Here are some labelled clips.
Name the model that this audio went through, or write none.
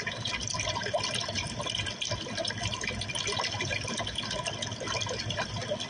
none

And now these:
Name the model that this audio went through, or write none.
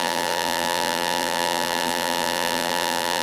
vocoder, BigVGAN v2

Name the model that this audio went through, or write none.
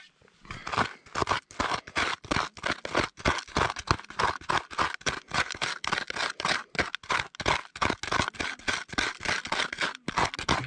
none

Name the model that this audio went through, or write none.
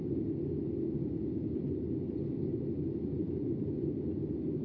none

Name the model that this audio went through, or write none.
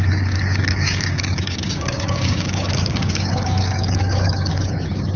codec, DAC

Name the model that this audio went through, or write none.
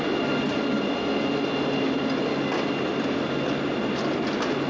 none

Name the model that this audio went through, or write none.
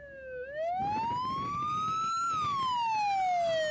none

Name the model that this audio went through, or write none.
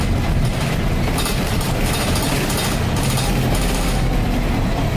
none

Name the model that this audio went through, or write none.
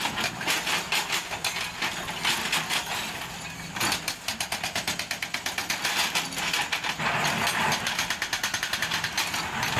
none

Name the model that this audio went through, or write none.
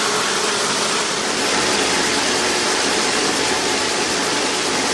none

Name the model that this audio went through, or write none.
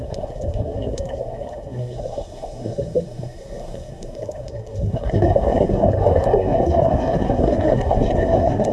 codec, SNAC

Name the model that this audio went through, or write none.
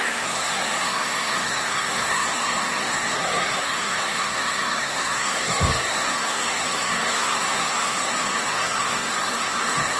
codec, SNAC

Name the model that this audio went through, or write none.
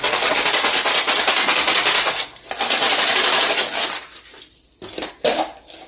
none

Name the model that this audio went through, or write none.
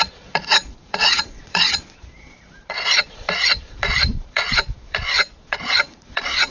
vocoder, Vocos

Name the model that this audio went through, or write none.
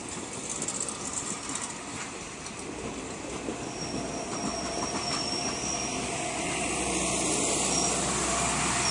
none